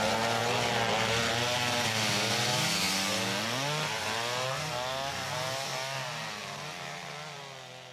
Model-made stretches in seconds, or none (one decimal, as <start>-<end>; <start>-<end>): 6.4-7.4